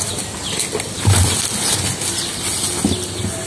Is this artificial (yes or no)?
no